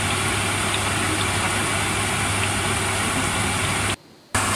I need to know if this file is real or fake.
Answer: real